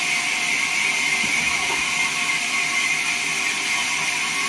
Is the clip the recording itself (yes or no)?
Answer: yes